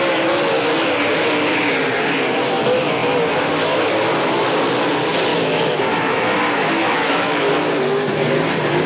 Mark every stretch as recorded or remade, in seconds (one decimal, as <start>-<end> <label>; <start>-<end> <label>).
0.0-5.3 recorded; 5.3-5.8 remade; 5.8-6.8 recorded; 6.8-7.5 remade; 7.5-8.9 recorded